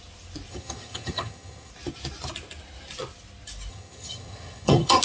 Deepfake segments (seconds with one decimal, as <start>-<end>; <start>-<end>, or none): 0.5-1.7; 3.7-5.0